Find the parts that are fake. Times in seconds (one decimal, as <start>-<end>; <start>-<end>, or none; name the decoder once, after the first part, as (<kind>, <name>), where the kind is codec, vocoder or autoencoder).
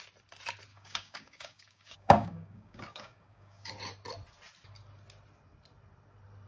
0.7-3.7 (codec, DAC)